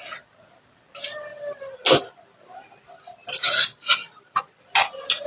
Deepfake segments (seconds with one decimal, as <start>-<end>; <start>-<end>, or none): none